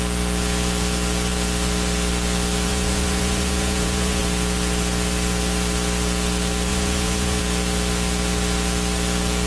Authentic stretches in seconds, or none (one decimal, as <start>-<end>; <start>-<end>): 0.0-2.7; 4.2-6.7; 7.4-9.5